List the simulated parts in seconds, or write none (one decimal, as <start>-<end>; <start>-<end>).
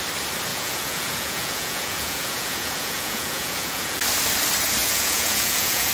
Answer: 0.5-4.0; 4.8-5.9